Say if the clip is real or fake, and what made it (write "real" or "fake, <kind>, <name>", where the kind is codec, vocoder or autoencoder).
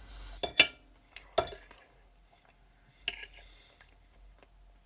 real